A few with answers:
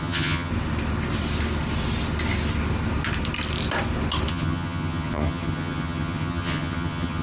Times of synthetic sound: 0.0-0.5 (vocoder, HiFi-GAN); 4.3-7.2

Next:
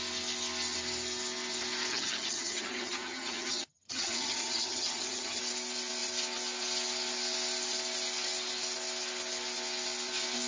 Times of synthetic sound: 1.9-5.4 (vocoder, HiFi-GAN)

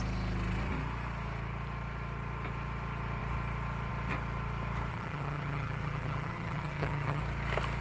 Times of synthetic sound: 4.9-7.2 (vocoder, HiFi-GAN)

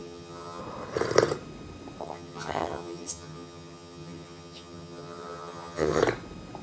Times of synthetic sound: 0.0-0.6 (vocoder, HiFi-GAN); 2.0-6.0